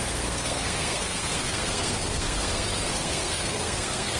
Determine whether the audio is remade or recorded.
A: remade